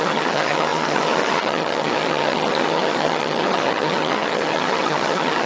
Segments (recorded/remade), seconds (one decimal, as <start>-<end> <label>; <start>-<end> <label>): 0.0-5.5 remade